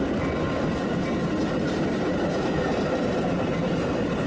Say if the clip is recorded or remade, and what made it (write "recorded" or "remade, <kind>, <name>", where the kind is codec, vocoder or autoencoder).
recorded